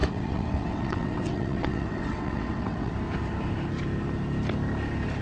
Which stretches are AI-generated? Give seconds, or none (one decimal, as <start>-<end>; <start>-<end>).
0.0-2.9